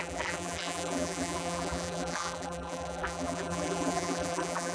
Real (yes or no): no